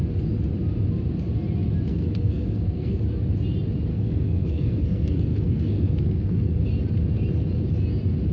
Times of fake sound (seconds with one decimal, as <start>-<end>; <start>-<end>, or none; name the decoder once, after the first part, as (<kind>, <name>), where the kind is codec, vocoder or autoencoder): 1.9-3.0 (codec, SNAC); 3.9-6.6